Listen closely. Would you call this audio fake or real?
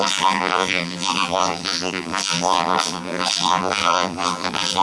fake